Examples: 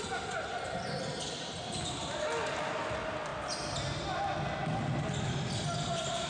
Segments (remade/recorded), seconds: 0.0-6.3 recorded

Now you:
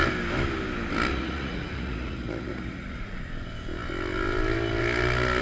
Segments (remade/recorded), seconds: 0.0-1.1 recorded; 1.1-3.2 remade; 3.2-5.4 recorded

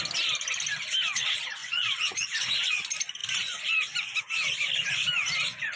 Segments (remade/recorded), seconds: 0.0-1.6 recorded; 1.6-2.7 remade; 2.7-5.8 recorded

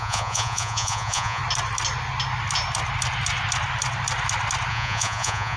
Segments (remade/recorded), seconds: 0.0-1.4 remade; 1.4-4.7 recorded; 4.7-5.6 remade

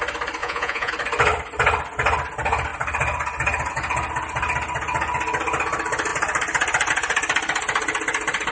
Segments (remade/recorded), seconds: 0.0-0.4 recorded; 0.4-0.9 remade; 0.9-8.5 recorded